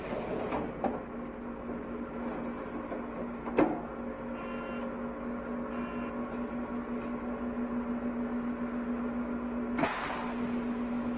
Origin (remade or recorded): recorded